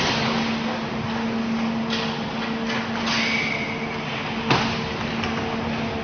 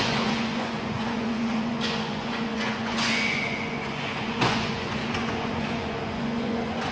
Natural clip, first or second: first